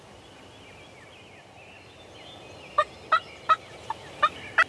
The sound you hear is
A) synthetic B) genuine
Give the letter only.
B